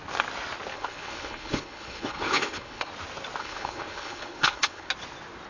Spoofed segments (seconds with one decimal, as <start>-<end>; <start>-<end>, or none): 0.7-2.9; 3.4-4.9